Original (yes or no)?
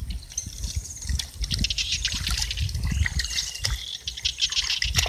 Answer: yes